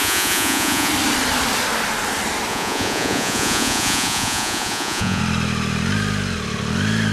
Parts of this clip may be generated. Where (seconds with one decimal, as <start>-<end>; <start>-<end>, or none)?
0.0-0.9; 2.5-5.2

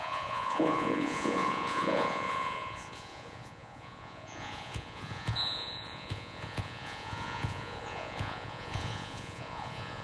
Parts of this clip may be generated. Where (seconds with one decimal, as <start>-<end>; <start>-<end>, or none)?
0.0-10.0

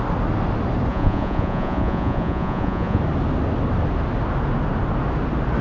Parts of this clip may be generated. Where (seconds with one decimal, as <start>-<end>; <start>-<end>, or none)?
0.9-3.0

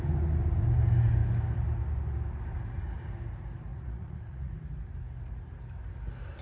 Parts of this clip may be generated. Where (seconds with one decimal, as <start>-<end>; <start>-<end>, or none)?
3.7-4.5

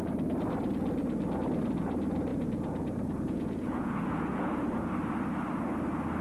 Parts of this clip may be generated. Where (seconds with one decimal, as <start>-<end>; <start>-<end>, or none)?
2.3-4.9

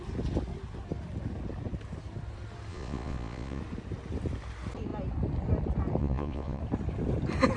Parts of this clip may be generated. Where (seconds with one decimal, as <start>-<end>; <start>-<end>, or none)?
2.7-3.6; 6.0-6.6

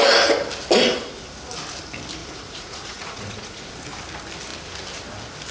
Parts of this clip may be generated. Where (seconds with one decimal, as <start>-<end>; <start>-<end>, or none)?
2.2-3.7

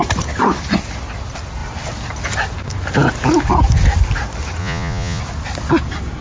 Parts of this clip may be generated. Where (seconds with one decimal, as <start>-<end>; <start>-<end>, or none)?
4.6-5.2